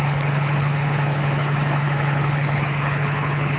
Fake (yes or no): yes